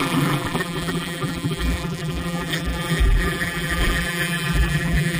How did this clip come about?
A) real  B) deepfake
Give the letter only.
B